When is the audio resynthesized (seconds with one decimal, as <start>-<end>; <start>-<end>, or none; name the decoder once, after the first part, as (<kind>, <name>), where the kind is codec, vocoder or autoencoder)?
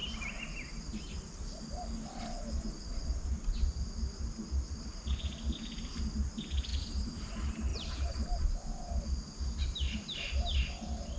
6.7-7.3 (vocoder, BigVGAN v2)